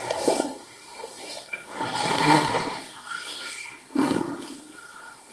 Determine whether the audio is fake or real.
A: fake